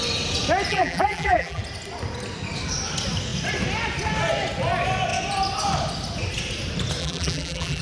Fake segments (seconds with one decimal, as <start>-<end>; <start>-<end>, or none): 0.7-1.6; 7.0-7.8